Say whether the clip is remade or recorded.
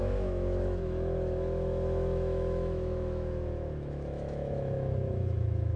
remade